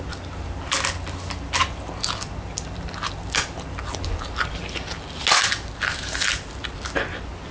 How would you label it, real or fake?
real